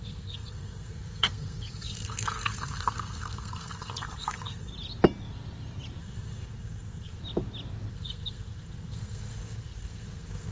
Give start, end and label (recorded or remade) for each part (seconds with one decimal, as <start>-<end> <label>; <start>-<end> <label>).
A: 0.0-4.7 remade; 4.7-6.0 recorded; 6.0-7.2 remade; 7.2-7.9 recorded; 7.9-10.5 remade